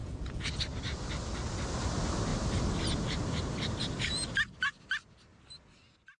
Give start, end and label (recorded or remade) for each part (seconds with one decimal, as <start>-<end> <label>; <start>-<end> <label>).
0.0-0.5 remade; 0.5-6.2 recorded